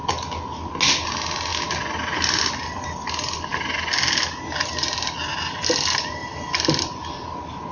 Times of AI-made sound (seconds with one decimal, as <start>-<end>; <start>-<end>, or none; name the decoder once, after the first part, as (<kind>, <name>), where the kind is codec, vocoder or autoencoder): none